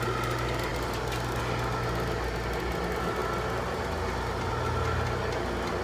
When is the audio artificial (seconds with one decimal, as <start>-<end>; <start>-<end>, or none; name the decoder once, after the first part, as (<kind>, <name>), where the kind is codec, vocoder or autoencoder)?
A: none